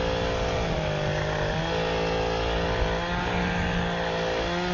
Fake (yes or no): no